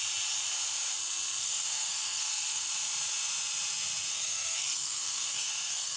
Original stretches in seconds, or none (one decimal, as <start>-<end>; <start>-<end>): 0.0-1.4; 2.7-4.1